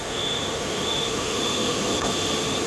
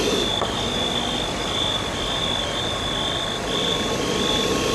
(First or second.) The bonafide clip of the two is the second